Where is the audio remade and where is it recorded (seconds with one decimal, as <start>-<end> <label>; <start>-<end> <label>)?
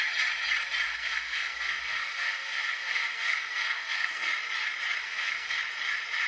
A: 0.0-0.9 recorded; 0.9-4.3 remade; 4.3-5.0 recorded; 5.0-5.6 remade; 5.6-6.3 recorded